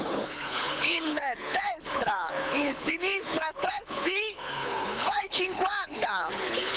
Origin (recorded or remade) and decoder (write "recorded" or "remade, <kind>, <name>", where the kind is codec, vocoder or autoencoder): remade, codec, HILCodec